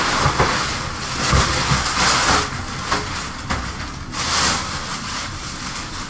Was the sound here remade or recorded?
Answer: recorded